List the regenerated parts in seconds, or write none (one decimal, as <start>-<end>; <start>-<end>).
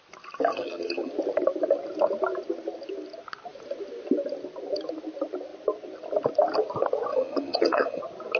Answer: 0.5-1.1; 7.1-8.0